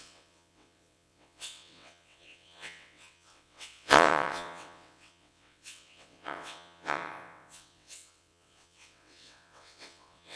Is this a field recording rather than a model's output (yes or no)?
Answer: no